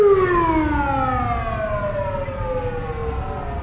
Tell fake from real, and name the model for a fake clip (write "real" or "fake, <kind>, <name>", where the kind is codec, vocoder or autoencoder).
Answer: real